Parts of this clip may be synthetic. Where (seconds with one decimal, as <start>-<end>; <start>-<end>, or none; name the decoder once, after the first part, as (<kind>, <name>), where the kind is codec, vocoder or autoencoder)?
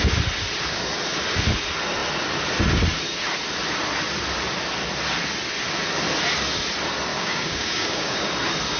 7.1-8.3 (codec, DAC)